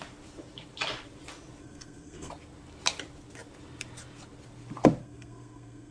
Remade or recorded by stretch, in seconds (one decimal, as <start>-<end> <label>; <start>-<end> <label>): 0.0-1.6 recorded; 1.6-2.3 remade; 2.3-5.0 recorded; 5.0-5.9 remade